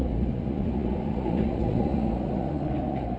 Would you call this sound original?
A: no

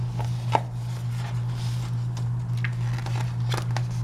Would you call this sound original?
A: yes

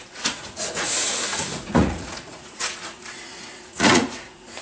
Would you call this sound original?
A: no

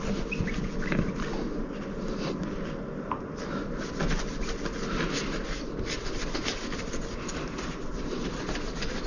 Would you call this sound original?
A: yes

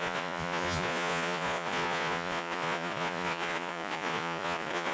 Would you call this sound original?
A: no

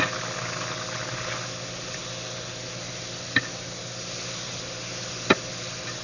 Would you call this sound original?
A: yes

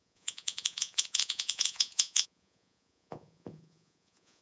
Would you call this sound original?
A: no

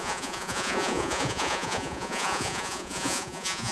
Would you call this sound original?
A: no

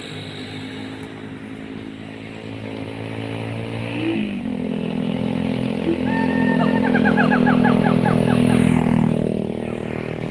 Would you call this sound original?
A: yes